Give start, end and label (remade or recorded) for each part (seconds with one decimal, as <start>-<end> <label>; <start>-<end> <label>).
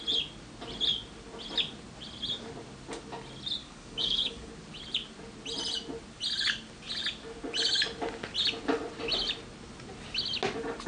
0.0-3.6 recorded; 3.6-4.5 remade; 4.5-10.9 recorded